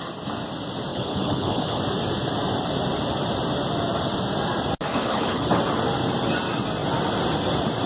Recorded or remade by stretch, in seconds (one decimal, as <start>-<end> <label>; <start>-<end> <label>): 0.0-0.9 recorded; 0.9-1.8 remade; 1.8-4.9 recorded; 4.9-5.5 remade; 5.5-7.9 recorded